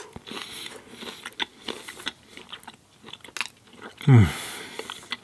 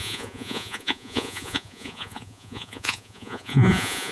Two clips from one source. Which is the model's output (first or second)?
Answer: second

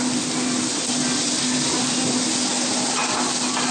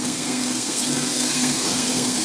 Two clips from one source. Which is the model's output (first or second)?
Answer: second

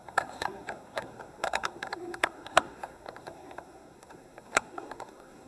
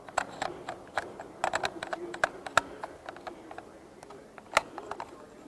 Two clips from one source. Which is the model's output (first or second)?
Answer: first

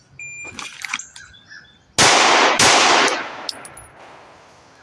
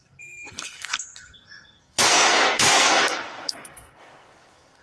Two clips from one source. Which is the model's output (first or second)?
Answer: second